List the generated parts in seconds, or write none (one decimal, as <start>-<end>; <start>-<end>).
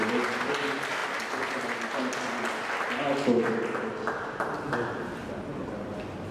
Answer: none